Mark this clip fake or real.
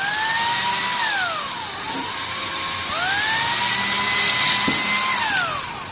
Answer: real